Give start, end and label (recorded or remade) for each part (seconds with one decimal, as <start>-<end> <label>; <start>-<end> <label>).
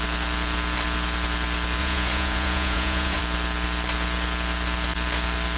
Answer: 0.0-1.8 recorded; 1.8-3.2 remade; 3.2-5.6 recorded